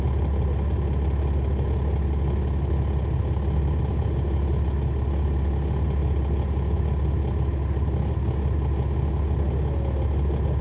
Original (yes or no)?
yes